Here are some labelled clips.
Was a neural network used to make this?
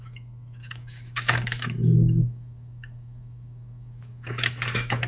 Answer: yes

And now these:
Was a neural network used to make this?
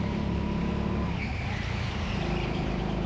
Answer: no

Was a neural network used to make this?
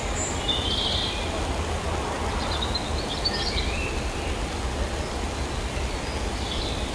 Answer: no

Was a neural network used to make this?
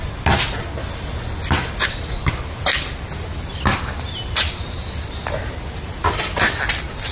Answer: no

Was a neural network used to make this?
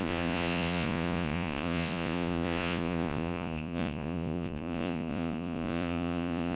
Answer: yes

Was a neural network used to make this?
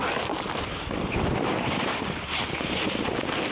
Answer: no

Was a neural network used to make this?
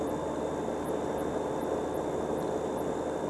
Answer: no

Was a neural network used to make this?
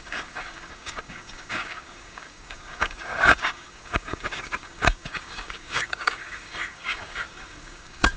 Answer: yes